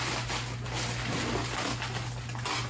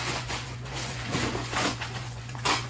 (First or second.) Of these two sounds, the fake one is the second